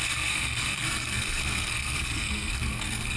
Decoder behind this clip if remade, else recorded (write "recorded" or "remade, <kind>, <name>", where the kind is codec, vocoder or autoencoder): remade, codec, SNAC